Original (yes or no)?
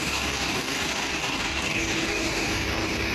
no